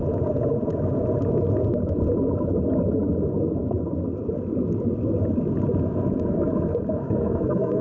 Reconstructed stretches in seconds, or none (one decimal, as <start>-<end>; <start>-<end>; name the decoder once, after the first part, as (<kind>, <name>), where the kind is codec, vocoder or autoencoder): 7.0-7.8 (codec, SNAC)